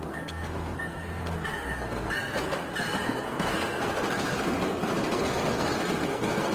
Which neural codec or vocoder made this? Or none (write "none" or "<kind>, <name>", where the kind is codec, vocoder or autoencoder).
codec, SNAC